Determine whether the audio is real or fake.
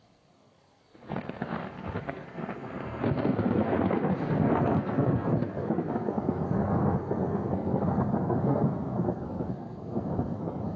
fake